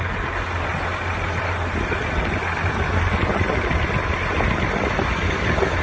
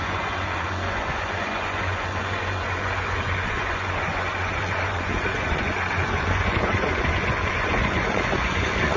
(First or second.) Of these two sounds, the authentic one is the first